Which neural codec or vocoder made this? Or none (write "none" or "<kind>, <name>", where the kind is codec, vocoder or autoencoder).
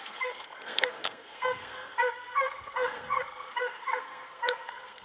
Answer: codec, SNAC